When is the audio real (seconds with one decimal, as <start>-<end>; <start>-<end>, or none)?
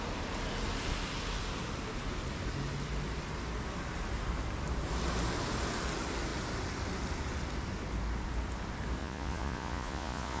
0.0-9.0